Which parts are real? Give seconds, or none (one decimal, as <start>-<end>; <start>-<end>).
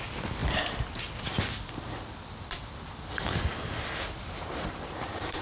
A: 0.0-5.4